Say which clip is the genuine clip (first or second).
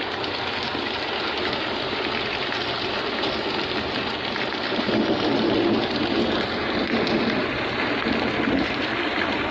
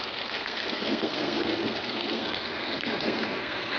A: first